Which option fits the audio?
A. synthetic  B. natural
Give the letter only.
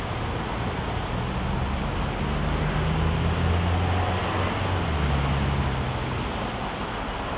B